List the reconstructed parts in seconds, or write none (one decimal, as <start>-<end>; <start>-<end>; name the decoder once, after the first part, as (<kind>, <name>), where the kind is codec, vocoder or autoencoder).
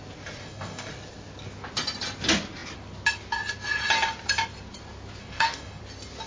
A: 0.4-0.9 (codec, DAC); 5.2-5.8